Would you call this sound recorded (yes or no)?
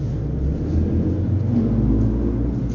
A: yes